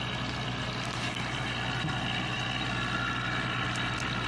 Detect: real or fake real